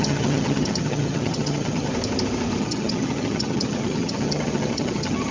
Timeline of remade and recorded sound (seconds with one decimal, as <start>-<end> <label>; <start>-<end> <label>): 0.0-1.9 remade; 1.9-2.6 recorded; 2.6-5.3 remade